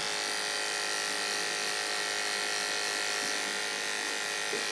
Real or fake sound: real